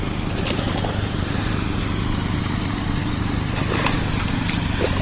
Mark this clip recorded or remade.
remade